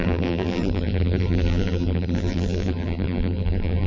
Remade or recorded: remade